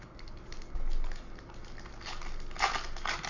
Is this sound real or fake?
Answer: real